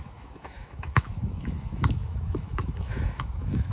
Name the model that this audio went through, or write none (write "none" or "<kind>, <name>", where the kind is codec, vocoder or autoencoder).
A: autoencoder, DAC-VAE